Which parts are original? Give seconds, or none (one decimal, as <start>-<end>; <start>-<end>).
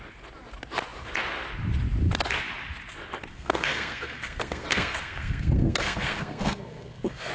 0.0-3.3